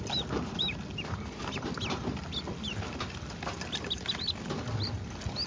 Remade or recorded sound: recorded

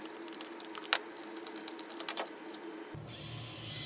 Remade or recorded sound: recorded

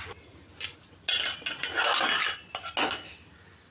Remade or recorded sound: recorded